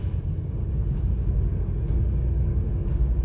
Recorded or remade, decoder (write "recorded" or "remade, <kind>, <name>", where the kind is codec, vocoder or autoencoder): remade, codec, DAC